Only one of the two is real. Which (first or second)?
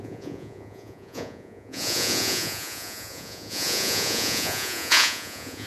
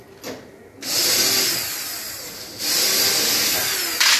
second